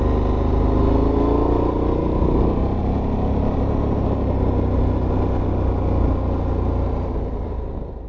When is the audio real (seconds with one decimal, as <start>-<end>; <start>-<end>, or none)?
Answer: 0.0-8.1

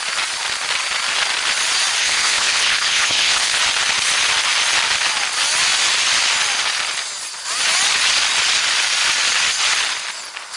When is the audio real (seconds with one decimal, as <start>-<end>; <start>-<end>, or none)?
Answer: 0.0-2.0; 3.6-10.6